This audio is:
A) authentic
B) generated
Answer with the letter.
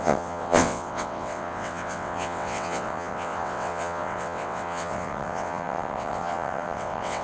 B